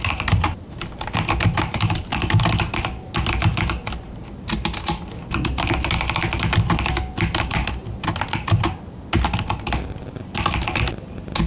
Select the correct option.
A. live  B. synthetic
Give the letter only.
A